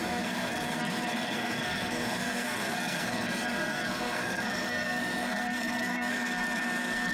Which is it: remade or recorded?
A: remade